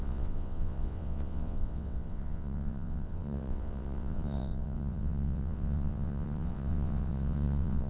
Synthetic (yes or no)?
yes